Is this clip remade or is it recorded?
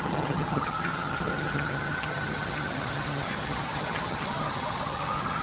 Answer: remade